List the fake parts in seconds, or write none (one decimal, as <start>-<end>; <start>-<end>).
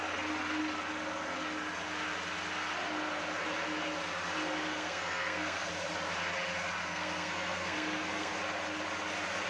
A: 4.7-5.7; 6.8-8.4